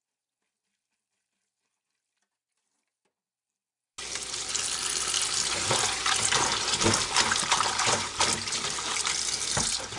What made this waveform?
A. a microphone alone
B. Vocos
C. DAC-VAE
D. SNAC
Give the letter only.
A